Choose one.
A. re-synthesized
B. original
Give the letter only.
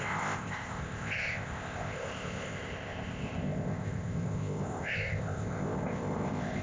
A